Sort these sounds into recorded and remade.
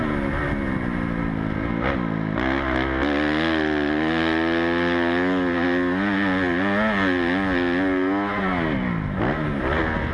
recorded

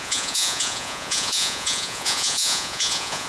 remade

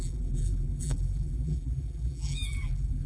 remade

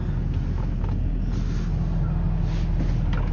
recorded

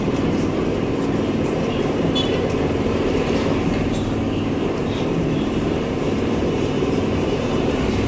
remade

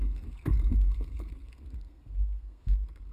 remade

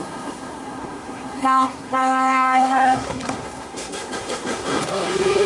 remade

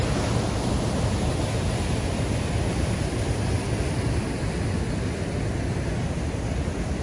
recorded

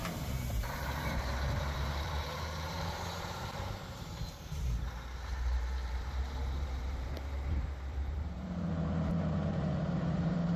remade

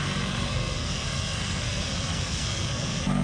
remade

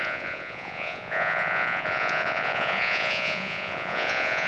remade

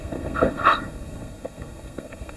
remade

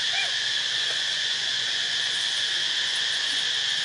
remade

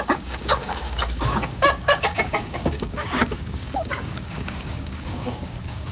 remade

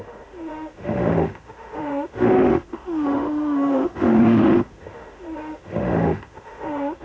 remade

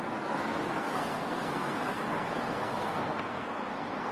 remade